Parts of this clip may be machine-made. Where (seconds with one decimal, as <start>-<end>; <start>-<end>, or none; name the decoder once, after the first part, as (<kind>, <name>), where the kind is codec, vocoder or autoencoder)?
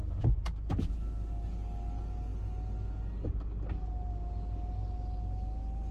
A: none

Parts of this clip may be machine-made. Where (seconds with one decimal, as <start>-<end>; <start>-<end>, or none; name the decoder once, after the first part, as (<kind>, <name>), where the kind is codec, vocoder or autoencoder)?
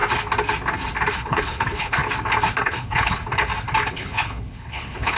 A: 1.1-2.0 (codec, HILCodec); 2.6-3.2; 3.9-5.2